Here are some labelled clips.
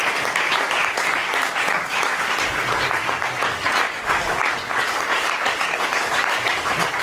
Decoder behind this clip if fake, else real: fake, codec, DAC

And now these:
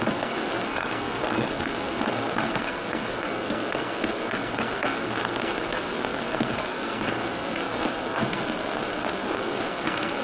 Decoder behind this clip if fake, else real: fake, codec, SNAC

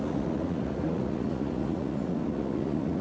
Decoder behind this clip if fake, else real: fake, vocoder, Vocos